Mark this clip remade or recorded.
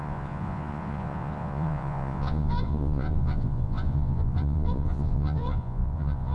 remade